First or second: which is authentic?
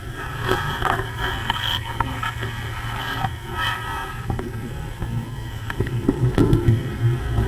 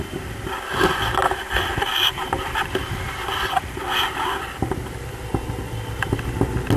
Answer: second